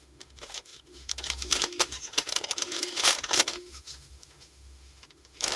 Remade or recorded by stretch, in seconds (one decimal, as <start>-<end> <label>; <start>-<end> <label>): 0.0-5.6 remade